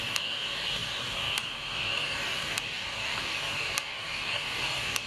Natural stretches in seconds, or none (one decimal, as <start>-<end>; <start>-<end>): none

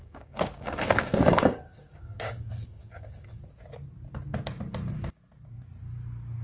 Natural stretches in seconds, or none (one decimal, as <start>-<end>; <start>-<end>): 3.4-6.4

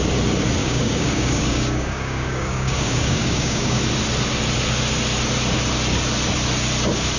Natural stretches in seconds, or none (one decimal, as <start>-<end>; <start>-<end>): 0.0-0.6; 3.8-7.2

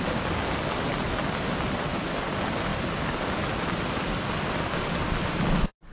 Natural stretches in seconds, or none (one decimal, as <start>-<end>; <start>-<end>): 0.0-5.9